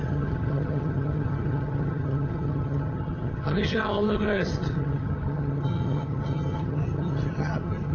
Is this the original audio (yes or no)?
no